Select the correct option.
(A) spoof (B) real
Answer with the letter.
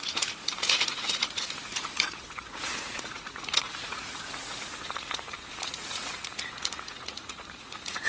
A